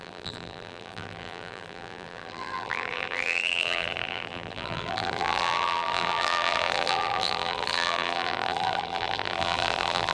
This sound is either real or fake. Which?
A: fake